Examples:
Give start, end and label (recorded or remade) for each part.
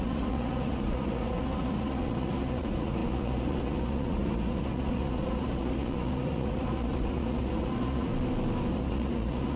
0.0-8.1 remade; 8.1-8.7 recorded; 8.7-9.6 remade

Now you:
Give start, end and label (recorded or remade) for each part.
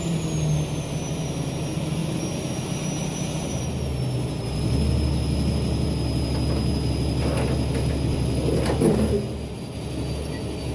0.0-10.7 recorded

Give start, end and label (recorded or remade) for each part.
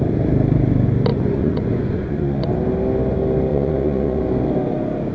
0.0-1.1 recorded; 1.1-2.5 remade; 2.5-3.5 recorded; 3.5-4.2 remade; 4.2-5.1 recorded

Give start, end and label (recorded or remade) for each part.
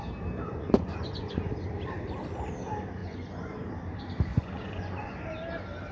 0.0-0.5 recorded; 0.5-1.5 remade; 1.5-3.0 recorded; 3.0-3.7 remade; 3.7-4.3 recorded; 4.3-5.1 remade; 5.1-5.9 recorded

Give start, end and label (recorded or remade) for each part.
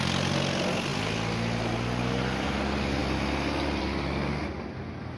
0.0-5.2 recorded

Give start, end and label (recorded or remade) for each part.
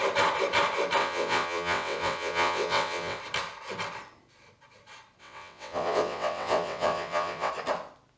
0.0-1.0 recorded; 1.0-3.2 remade; 3.2-5.2 recorded; 5.2-7.5 remade; 7.5-8.2 recorded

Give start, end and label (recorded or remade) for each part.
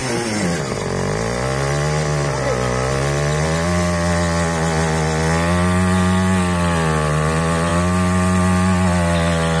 0.0-9.6 recorded